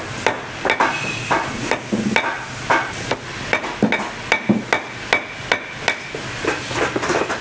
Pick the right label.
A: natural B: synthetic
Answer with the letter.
A